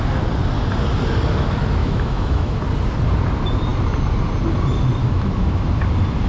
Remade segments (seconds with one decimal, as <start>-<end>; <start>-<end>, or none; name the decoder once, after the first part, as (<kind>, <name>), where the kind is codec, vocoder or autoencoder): 1.8-2.6 (autoencoder, DAC-VAE); 5.0-5.6